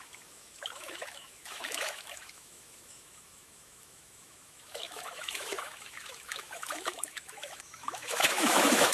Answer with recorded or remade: remade